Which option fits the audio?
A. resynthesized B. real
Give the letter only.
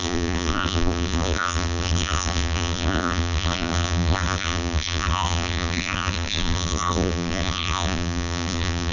A